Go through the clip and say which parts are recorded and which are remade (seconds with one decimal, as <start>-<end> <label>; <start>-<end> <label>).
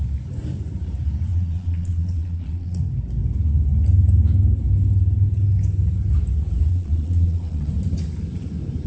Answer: 0.0-1.3 recorded; 1.3-2.8 remade; 2.8-6.7 recorded; 6.7-7.7 remade; 7.7-8.9 recorded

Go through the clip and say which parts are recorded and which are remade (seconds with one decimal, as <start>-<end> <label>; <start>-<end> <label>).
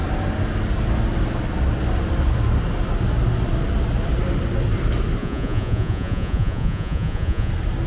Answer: 0.0-5.2 recorded; 5.2-7.5 remade; 7.5-7.9 recorded